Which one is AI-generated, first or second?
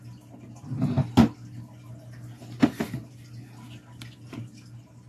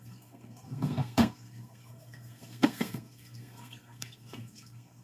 second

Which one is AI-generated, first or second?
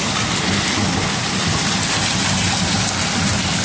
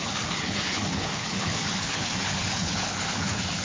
second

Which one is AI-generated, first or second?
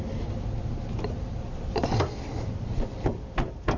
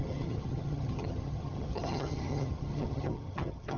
second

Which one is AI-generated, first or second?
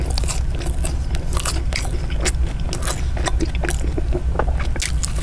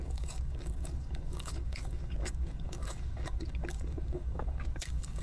second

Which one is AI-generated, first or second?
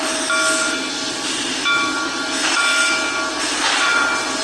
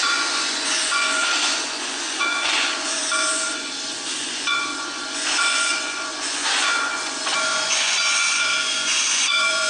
second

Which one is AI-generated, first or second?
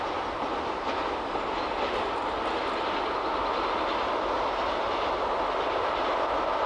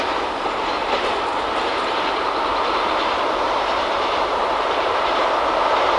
second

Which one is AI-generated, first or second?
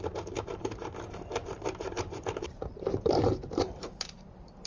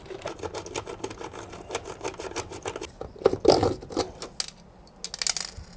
first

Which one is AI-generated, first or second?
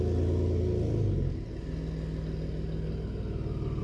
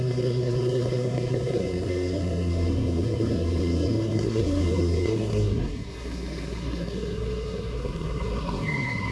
second